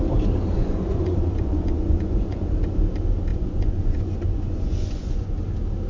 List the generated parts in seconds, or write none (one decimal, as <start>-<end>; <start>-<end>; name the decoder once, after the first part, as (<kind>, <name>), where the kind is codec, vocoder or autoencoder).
0.5-2.5 (vocoder, Vocos); 3.3-5.4